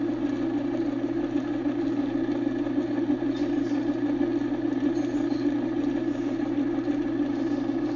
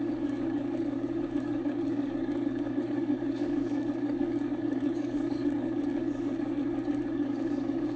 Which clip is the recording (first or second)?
first